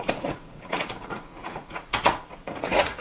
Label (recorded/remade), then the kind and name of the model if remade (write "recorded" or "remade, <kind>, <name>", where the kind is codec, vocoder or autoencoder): remade, vocoder, Vocos